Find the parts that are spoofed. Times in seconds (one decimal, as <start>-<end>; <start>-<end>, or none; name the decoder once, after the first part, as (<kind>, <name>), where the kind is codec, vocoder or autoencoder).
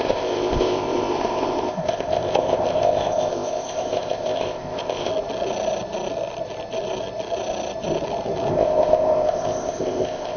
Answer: 0.0-5.1 (codec, ZipCodec); 8.5-10.4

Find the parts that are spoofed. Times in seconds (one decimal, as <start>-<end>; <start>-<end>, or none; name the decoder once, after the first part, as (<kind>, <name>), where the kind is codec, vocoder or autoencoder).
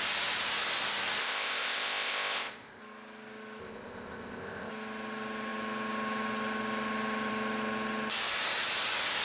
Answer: 1.2-2.8 (codec, ZipCodec); 3.6-4.7